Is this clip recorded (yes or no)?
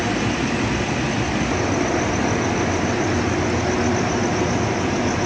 yes